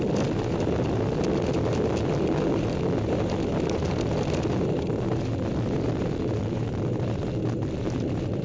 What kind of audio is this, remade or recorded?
recorded